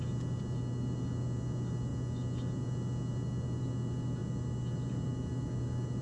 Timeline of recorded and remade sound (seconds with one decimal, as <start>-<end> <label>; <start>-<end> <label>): 0.0-6.0 recorded